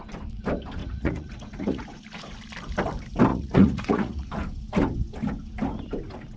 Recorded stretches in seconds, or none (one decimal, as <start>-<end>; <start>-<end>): 0.0-0.8; 2.0-3.3; 4.3-6.4